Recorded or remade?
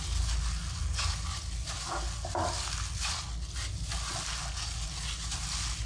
recorded